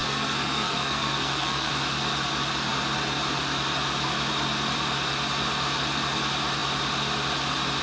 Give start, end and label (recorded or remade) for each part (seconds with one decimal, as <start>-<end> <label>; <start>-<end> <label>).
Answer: 0.0-1.7 remade; 1.7-7.8 recorded